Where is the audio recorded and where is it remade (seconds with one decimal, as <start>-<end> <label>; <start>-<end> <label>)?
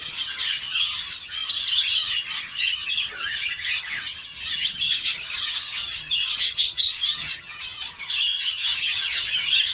0.0-9.7 remade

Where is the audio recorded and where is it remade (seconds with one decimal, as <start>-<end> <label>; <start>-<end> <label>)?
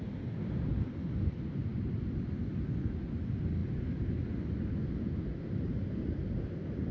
0.0-6.9 recorded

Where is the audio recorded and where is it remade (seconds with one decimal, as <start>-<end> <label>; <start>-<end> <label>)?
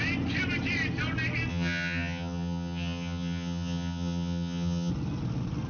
0.0-1.5 recorded; 1.5-4.9 remade; 4.9-5.7 recorded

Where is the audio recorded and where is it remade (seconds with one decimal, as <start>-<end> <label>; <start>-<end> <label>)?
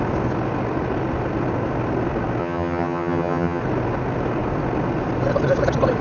0.0-2.4 recorded; 2.4-3.6 remade; 3.6-6.0 recorded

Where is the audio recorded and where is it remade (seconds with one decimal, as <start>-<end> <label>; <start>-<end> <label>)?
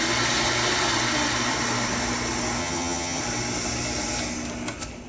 0.0-2.6 recorded; 2.6-3.2 remade; 3.2-5.1 recorded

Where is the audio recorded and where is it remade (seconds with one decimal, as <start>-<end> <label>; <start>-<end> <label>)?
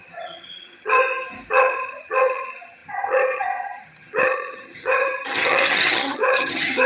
0.0-1.0 remade; 1.0-1.5 recorded; 1.5-6.9 remade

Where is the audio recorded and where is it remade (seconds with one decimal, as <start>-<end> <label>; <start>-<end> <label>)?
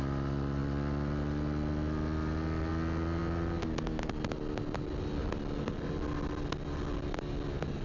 0.0-7.8 recorded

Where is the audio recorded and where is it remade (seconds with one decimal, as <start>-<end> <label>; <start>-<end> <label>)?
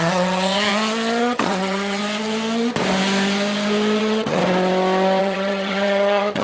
0.0-0.7 remade; 0.7-1.2 recorded; 1.2-2.0 remade; 2.0-4.0 recorded; 4.0-4.4 remade; 4.4-5.2 recorded; 5.2-6.4 remade